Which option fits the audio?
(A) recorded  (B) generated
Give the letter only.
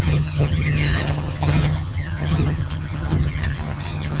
B